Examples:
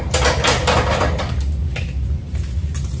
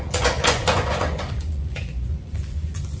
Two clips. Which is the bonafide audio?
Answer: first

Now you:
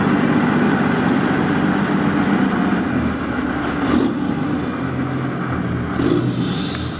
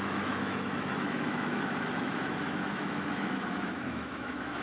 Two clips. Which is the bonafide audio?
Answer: first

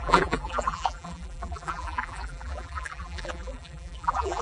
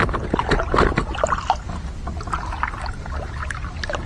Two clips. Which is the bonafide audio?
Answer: second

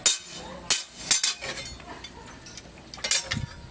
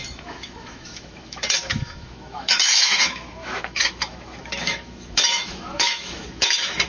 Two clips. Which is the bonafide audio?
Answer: first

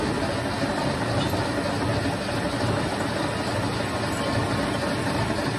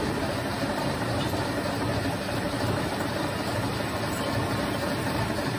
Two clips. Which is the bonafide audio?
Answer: first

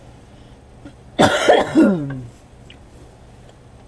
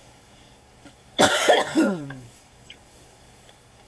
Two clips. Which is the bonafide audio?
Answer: first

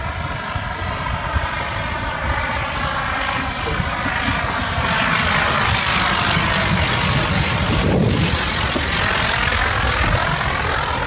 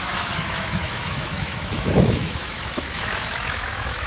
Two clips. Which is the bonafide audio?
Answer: first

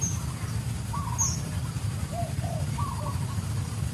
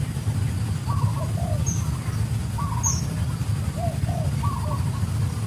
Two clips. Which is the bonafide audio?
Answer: second